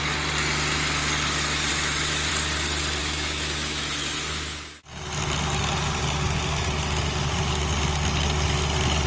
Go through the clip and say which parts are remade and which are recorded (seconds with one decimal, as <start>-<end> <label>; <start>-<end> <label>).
0.0-1.7 recorded; 1.7-2.3 remade; 2.3-3.0 recorded; 3.0-4.8 remade; 4.8-9.1 recorded

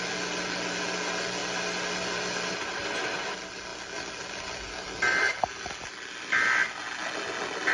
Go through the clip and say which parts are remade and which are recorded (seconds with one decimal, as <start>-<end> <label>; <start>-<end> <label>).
0.0-7.7 recorded

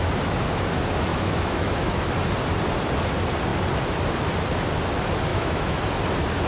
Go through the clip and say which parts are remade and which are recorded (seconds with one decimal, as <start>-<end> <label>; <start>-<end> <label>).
0.0-1.1 recorded; 1.1-2.0 remade; 2.0-5.3 recorded; 5.3-5.8 remade; 5.8-6.5 recorded

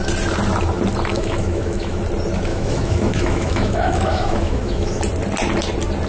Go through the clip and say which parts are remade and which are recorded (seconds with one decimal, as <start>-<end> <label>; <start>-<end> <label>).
0.0-1.1 recorded; 1.1-2.0 remade; 2.0-2.5 recorded; 2.5-5.0 remade; 5.0-6.1 recorded

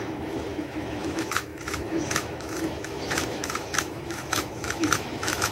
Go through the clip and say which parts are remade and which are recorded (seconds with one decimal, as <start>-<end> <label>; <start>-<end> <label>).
0.0-5.5 remade

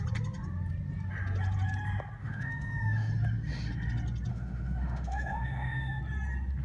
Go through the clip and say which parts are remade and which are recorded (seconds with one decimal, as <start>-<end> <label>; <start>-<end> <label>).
0.0-2.2 recorded; 2.2-3.1 remade; 3.1-4.3 recorded; 4.3-6.0 remade; 6.0-6.6 recorded

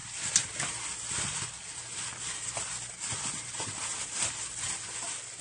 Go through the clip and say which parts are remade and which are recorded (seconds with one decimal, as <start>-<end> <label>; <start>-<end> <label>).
0.0-5.4 recorded

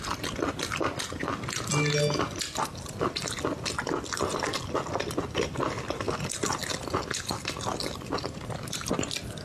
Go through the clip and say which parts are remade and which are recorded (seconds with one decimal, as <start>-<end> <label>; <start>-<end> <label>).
0.0-9.4 recorded